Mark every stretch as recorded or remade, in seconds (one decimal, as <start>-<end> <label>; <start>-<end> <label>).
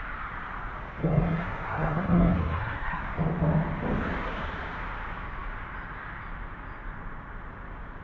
0.0-1.0 recorded; 1.0-3.0 remade; 3.0-8.0 recorded